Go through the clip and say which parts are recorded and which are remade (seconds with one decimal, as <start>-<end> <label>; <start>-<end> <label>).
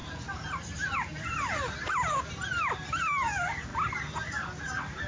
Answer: 0.0-5.1 recorded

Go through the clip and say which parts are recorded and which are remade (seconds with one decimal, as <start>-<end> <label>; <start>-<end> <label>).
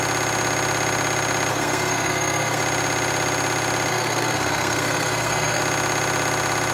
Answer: 0.0-1.5 recorded; 1.5-2.6 remade; 2.6-3.9 recorded; 3.9-5.6 remade; 5.6-6.7 recorded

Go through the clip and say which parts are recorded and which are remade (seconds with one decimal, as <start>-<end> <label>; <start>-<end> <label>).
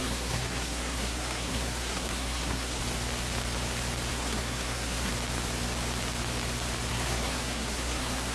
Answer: 0.0-2.8 remade; 2.8-4.1 recorded; 4.1-5.1 remade; 5.1-6.9 recorded; 6.9-8.3 remade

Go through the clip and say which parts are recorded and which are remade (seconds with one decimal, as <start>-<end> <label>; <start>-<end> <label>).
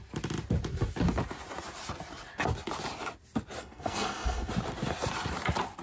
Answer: 0.0-3.6 recorded; 3.6-4.5 remade; 4.5-5.8 recorded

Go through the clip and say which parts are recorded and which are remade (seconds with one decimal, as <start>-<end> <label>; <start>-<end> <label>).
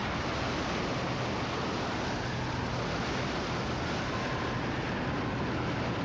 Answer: 0.0-6.0 recorded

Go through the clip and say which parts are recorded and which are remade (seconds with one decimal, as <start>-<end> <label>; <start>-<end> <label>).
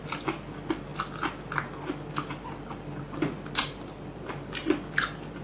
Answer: 0.0-5.4 recorded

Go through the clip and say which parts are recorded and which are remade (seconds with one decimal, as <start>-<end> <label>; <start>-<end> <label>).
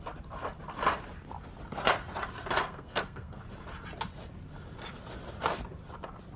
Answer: 0.0-2.6 recorded; 2.6-3.4 remade; 3.4-6.4 recorded